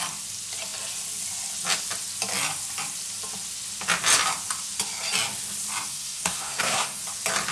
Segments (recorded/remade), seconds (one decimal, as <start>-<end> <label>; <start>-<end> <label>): 0.0-5.9 recorded; 5.9-7.0 remade; 7.0-7.5 recorded